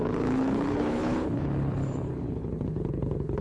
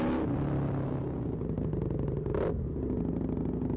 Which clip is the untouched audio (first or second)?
second